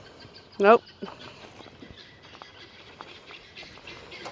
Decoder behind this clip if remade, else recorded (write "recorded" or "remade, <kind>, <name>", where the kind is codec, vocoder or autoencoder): recorded